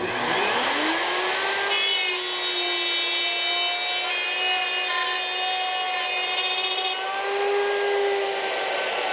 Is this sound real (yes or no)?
yes